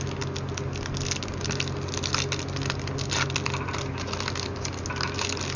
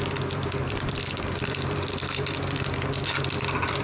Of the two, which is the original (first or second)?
first